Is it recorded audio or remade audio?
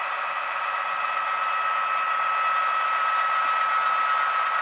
recorded